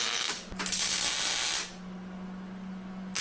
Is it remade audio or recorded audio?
recorded